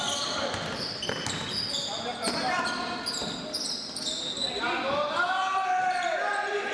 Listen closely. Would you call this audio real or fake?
real